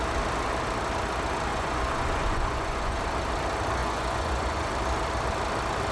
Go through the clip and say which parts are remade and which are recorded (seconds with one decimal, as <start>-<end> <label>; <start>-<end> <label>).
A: 0.0-1.5 recorded; 1.5-3.0 remade; 3.0-3.8 recorded; 3.8-4.7 remade; 4.7-5.9 recorded